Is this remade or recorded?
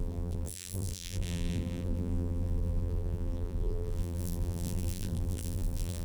remade